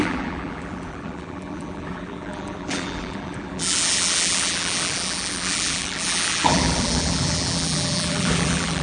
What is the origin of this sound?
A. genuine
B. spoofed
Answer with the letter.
B